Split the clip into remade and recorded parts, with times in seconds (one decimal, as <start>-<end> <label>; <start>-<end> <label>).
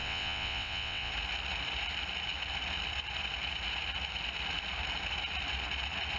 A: 0.0-1.1 remade; 1.1-6.2 recorded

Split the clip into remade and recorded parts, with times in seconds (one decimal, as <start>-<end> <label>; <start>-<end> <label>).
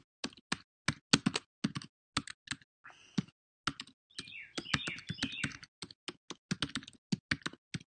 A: 0.0-7.9 recorded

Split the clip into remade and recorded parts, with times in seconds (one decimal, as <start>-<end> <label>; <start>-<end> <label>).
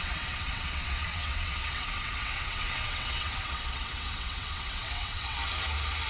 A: 0.0-5.4 remade; 5.4-6.1 recorded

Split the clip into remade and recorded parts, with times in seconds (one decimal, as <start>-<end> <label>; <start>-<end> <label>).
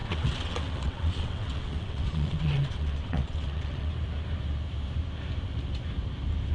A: 0.0-3.9 remade; 3.9-6.5 recorded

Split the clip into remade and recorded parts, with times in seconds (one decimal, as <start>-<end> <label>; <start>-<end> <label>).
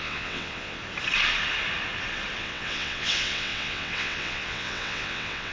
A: 0.0-0.8 remade; 0.8-2.4 recorded; 2.4-5.5 remade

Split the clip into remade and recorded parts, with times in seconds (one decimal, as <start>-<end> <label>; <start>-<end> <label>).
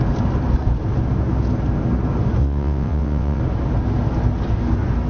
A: 0.0-2.4 recorded; 2.4-3.4 remade; 3.4-5.1 recorded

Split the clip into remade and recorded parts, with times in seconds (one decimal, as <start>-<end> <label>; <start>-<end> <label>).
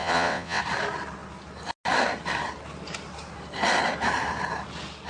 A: 0.0-0.6 remade; 0.6-5.1 recorded